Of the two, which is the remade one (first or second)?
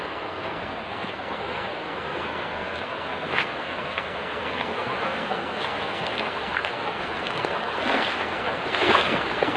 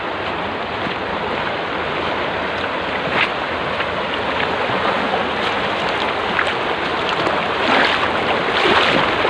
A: first